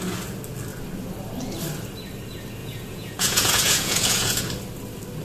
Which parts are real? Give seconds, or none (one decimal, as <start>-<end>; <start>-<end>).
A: 0.0-2.6; 4.4-5.2